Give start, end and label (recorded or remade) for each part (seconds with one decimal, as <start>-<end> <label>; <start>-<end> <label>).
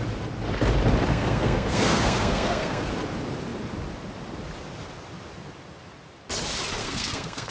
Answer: 0.0-1.1 recorded; 1.1-2.9 remade; 2.9-6.8 recorded; 6.8-7.5 remade